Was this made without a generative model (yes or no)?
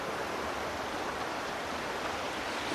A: yes